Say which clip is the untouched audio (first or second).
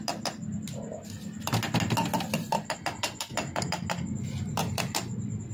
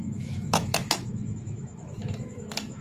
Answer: first